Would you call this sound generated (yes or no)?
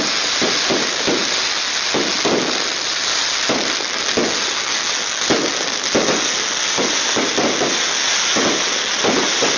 no